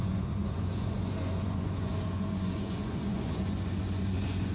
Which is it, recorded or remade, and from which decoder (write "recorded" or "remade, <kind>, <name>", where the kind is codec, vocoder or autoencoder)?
remade, vocoder, Vocos